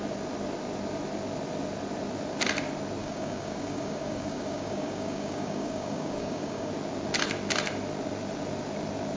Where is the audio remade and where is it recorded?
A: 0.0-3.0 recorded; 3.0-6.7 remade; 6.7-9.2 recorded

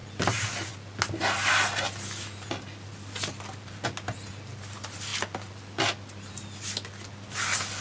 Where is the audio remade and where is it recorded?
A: 0.0-7.8 recorded

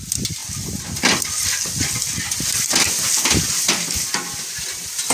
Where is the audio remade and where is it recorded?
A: 0.0-5.1 recorded

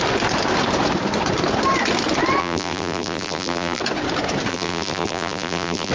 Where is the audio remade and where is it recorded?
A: 0.0-2.4 recorded; 2.4-3.8 remade; 3.8-4.5 recorded; 4.5-5.9 remade

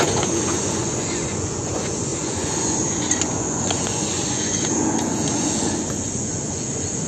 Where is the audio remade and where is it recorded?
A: 0.0-7.1 remade

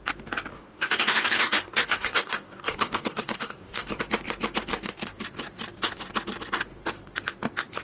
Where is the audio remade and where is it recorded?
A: 0.0-0.5 recorded; 0.5-4.0 remade; 4.0-4.7 recorded; 4.7-5.2 remade; 5.2-7.8 recorded

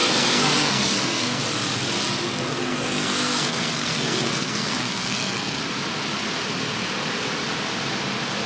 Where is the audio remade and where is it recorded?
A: 0.0-1.4 remade; 1.4-2.5 recorded; 2.5-5.6 remade; 5.6-8.5 recorded